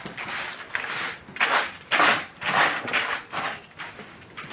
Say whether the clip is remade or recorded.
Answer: recorded